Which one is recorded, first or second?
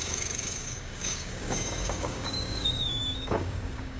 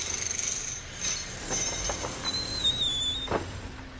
second